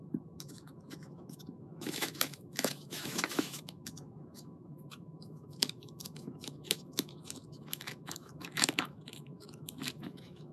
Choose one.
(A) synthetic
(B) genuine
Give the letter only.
A